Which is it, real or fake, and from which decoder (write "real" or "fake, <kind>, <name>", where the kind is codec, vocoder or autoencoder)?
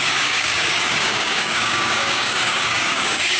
fake, codec, DAC